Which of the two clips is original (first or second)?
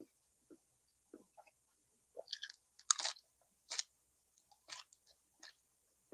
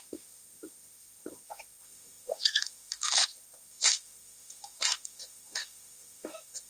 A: first